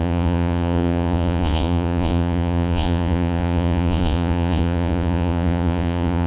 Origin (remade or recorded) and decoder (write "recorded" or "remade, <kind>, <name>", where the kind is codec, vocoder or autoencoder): remade, vocoder, Vocos